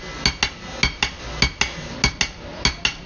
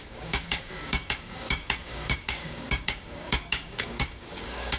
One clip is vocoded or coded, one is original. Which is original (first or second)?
first